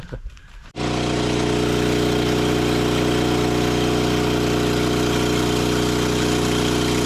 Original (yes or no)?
yes